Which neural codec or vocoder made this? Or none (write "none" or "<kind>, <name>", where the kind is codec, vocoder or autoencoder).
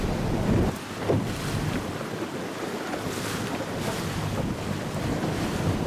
none